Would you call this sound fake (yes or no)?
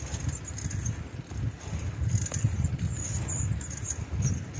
no